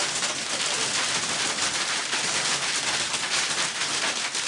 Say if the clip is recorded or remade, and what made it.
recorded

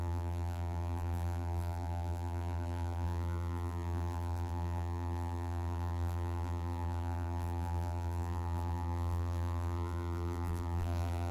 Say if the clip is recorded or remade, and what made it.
remade, vocoder, BigVGAN v2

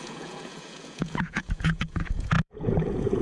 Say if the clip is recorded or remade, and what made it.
remade, vocoder, Vocos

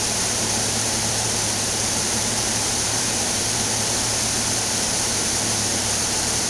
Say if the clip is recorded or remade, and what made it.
remade, vocoder, BigVGAN v2